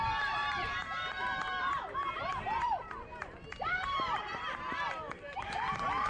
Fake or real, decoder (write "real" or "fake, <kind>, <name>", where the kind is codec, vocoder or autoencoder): fake, vocoder, BigVGAN v2